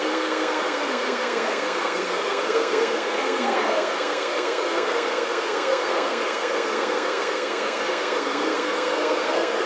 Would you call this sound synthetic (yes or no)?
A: yes